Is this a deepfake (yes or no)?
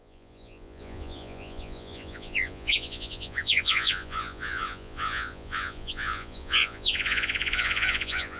yes